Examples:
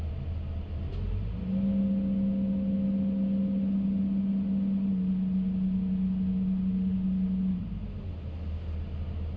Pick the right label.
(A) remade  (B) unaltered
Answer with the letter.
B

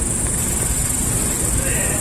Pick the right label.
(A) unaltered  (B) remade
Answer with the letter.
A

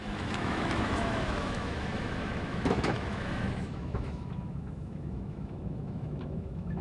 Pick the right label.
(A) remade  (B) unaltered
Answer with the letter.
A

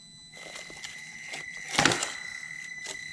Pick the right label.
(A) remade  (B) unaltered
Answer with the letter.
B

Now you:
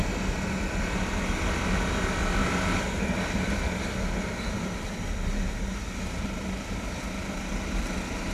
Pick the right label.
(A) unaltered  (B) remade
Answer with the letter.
A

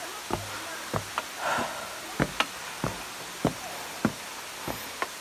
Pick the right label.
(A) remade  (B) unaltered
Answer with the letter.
B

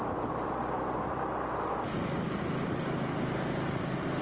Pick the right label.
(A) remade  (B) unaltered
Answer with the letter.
B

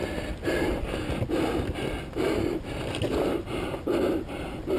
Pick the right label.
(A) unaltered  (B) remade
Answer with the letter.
A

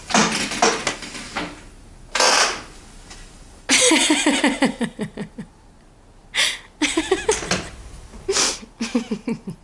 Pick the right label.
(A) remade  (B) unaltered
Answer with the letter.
B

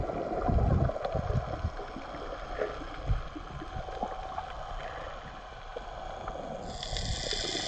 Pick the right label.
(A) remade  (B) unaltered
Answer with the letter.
B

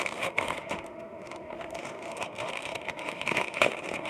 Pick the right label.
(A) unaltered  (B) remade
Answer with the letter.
B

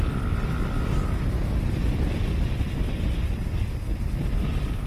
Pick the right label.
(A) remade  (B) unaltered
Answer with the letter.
B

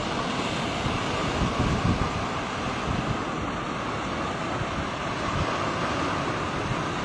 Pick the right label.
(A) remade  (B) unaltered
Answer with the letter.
B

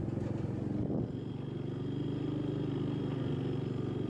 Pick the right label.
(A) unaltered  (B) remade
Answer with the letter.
A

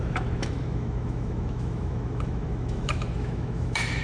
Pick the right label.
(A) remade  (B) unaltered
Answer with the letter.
A